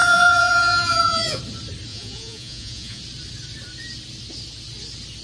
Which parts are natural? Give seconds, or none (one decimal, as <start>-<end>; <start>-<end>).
1.4-1.9; 3.0-5.2